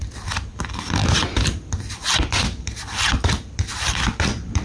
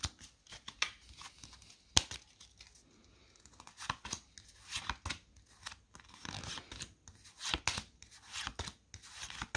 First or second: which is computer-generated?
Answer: first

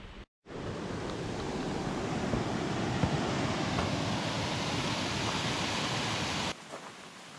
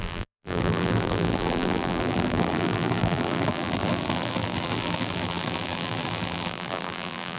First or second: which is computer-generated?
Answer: second